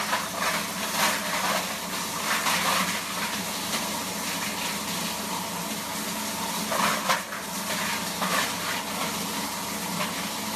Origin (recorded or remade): recorded